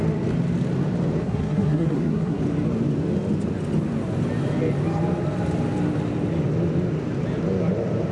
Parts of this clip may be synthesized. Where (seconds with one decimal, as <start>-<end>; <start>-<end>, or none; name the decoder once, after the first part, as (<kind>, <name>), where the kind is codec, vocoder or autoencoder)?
1.2-2.4 (codec, SNAC)